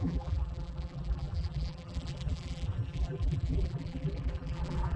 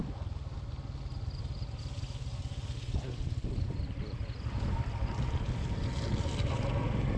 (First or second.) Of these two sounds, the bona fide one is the second